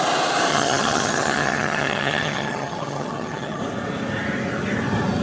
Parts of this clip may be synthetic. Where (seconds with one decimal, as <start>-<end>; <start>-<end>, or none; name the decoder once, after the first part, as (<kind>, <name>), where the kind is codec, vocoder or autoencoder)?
0.5-3.6 (vocoder, HiFi-GAN)